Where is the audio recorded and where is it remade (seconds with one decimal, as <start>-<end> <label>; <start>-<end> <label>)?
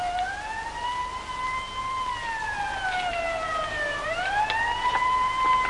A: 0.0-3.1 recorded; 3.1-4.6 remade; 4.6-5.7 recorded